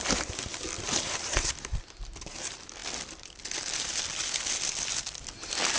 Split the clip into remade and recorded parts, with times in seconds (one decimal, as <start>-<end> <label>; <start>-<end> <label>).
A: 0.0-5.8 recorded